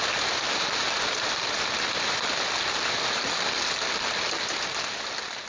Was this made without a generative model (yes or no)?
yes